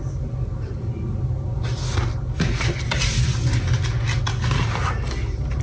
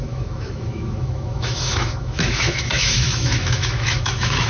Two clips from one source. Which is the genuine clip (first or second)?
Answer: first